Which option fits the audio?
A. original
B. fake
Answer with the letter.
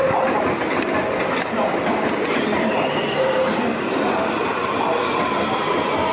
A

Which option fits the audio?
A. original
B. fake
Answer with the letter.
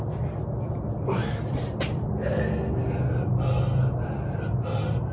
A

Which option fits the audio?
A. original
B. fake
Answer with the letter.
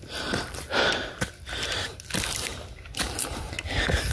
A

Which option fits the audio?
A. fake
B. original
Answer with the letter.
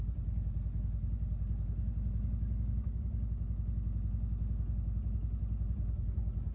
B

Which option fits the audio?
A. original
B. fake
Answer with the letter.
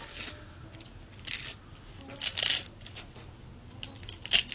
A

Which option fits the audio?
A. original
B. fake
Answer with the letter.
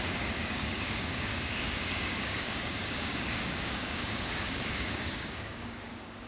B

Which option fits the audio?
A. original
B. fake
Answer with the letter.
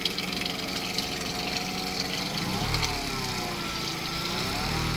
A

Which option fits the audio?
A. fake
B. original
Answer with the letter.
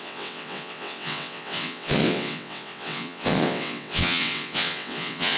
A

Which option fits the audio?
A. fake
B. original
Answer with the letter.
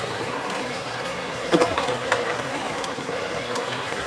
A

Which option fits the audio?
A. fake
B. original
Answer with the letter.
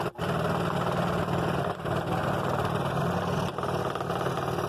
B